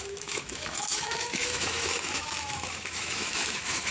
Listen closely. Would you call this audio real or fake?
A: fake